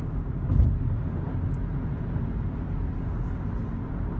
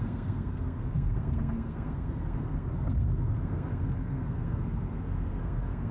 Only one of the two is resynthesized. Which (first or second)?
second